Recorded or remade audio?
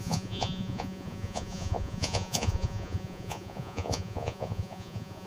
remade